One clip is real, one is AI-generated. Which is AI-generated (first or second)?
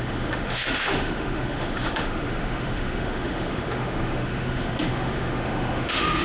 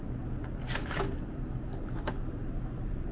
first